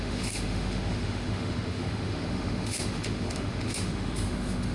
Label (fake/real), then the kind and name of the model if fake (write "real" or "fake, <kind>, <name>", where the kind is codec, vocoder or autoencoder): fake, autoencoder, DAC-VAE